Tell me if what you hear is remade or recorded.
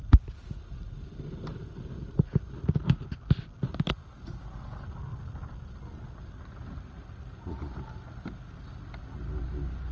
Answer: recorded